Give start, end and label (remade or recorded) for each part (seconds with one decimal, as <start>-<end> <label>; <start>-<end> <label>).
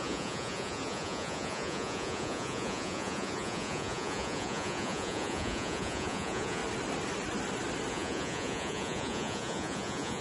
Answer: 0.0-6.6 remade; 6.6-7.9 recorded; 7.9-10.2 remade